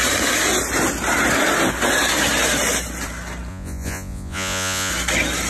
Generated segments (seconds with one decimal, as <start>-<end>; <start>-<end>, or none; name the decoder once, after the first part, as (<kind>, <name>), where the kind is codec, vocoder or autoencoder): 3.5-4.9 (vocoder, Vocos)